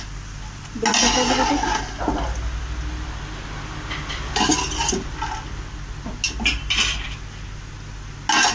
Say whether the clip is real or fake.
real